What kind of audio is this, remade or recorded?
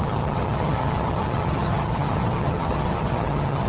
remade